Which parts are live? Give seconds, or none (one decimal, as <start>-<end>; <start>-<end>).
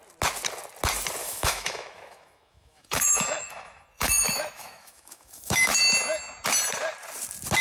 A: 0.0-1.2; 5.8-7.6